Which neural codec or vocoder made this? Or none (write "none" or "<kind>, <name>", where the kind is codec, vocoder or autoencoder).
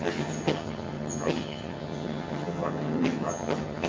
vocoder, HiFi-GAN